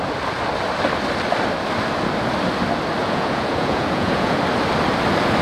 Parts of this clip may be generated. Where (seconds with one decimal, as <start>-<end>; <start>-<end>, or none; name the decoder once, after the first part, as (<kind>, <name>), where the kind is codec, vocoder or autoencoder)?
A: 3.0-4.4 (vocoder, Vocos)